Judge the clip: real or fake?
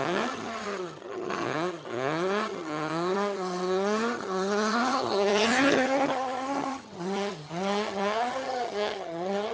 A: fake